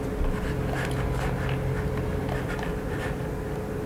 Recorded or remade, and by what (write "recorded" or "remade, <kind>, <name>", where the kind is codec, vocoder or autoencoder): recorded